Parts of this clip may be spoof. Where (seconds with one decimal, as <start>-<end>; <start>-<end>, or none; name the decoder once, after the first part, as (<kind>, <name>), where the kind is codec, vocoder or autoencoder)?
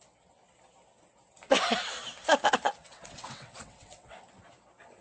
2.8-4.2 (vocoder, WaveNeXt)